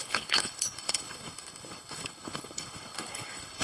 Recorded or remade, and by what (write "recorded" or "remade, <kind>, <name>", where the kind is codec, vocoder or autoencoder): remade, codec, HILCodec